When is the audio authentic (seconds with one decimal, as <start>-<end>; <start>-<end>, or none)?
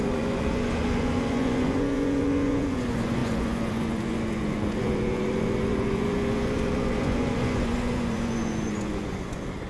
none